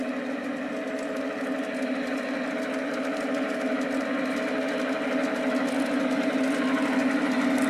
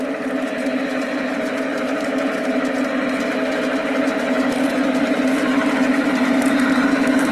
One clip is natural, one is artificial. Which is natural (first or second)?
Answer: first